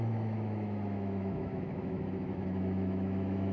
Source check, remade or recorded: remade